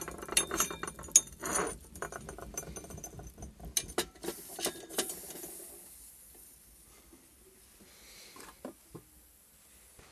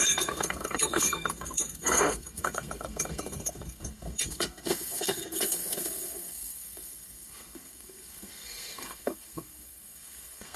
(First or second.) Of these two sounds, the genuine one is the first